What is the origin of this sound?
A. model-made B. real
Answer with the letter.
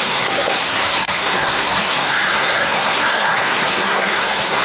A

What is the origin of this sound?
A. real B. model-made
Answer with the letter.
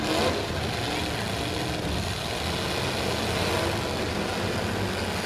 A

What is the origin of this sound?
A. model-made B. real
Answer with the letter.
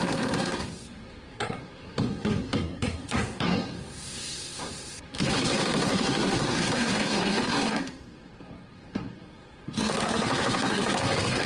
A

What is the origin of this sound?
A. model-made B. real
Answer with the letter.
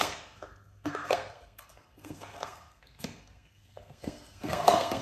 A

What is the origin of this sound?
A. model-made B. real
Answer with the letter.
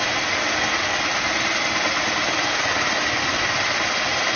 B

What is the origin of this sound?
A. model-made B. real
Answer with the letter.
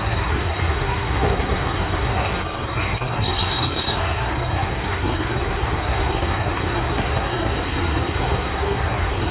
A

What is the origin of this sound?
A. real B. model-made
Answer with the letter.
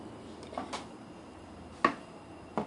A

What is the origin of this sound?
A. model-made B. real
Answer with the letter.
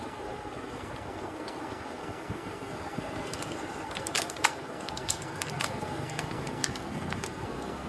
A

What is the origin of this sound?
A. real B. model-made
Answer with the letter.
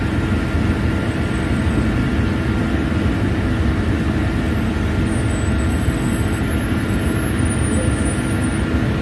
A